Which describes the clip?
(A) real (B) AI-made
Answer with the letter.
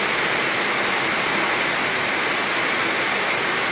A